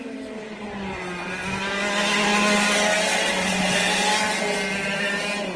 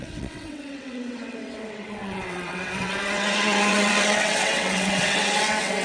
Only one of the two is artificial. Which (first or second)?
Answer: second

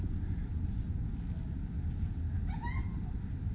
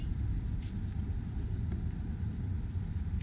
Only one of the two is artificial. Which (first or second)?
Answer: second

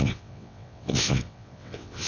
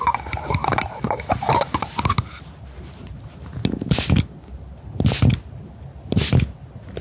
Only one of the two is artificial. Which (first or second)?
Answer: first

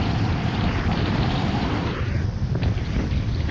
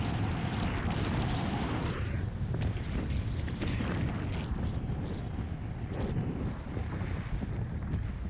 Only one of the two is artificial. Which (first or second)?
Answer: first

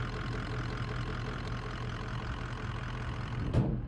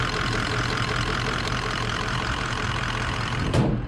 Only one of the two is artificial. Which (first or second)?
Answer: second